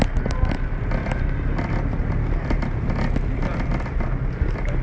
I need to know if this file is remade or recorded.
recorded